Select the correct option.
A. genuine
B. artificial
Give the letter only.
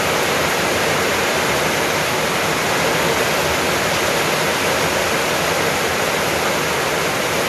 A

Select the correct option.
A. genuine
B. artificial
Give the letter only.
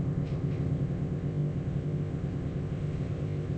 B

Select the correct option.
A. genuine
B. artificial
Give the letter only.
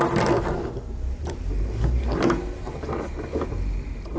A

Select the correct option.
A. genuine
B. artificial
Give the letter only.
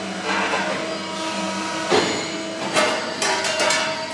A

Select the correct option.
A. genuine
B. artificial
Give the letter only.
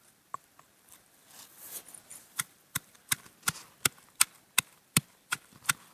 B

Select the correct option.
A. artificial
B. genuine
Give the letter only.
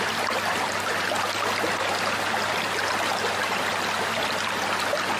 B